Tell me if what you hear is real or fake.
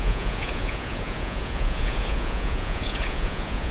fake